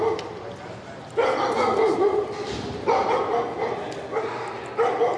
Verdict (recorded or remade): recorded